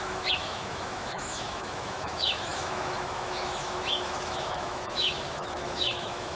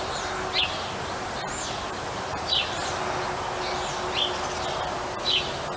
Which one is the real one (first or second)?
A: second